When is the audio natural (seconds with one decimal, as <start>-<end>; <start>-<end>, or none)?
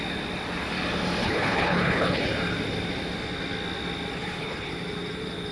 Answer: 0.0-1.2; 2.2-4.2; 4.7-5.5